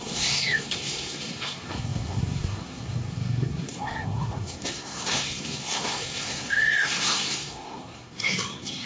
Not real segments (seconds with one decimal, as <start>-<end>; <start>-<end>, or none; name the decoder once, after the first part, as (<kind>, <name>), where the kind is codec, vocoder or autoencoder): 0.0-8.9 (codec, SNAC)